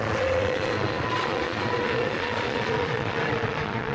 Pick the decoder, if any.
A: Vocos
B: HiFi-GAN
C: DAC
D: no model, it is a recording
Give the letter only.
A